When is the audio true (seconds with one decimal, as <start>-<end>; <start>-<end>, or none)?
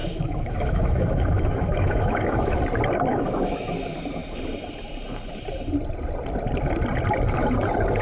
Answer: 2.6-3.1; 3.7-8.0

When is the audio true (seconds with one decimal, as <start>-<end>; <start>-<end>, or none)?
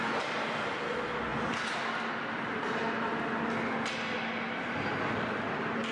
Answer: 0.0-5.9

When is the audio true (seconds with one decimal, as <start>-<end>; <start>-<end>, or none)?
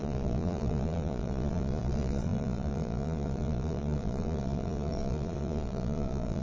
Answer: none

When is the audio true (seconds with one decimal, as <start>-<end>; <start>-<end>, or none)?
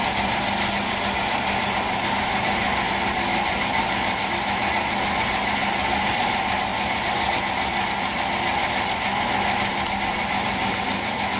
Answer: 0.0-3.3; 4.3-5.4; 6.1-10.1; 10.8-11.4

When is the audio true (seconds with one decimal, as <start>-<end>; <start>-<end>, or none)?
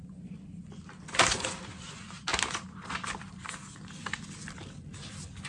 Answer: 0.0-5.5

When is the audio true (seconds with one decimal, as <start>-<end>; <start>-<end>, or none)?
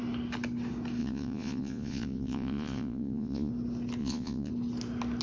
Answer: 0.0-1.0; 3.5-4.0; 4.5-5.2